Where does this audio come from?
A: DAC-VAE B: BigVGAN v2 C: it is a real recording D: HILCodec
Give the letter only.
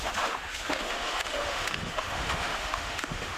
A